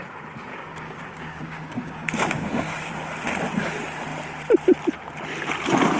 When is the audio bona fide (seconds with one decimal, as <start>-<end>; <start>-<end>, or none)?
0.0-0.5; 2.9-6.0